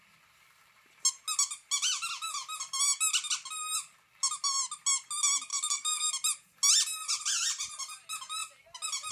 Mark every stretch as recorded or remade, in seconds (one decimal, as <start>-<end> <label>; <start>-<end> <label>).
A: 0.0-5.5 recorded; 5.5-6.1 remade; 6.1-9.1 recorded